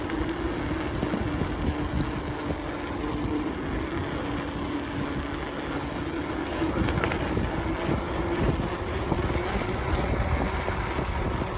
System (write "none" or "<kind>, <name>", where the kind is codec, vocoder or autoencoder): none